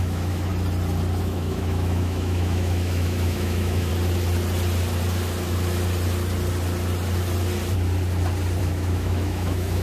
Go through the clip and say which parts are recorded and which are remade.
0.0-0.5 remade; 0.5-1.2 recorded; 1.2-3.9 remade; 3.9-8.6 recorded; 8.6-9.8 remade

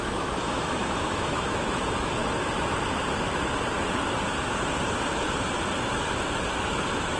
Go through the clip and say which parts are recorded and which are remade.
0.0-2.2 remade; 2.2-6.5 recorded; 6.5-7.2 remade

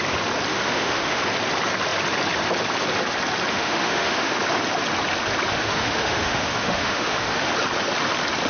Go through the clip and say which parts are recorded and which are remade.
0.0-0.5 recorded; 0.5-1.2 remade; 1.2-3.5 recorded; 3.5-4.4 remade; 4.4-5.5 recorded; 5.5-7.5 remade; 7.5-8.5 recorded

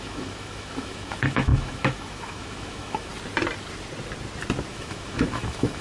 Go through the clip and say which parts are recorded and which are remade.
0.0-3.1 remade; 3.1-4.7 recorded; 4.7-5.8 remade